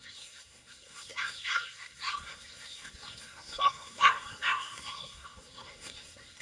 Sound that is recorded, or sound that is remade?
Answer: remade